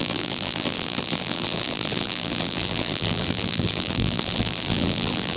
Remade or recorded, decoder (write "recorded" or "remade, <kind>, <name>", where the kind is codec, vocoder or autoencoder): remade, vocoder, BigVGAN v2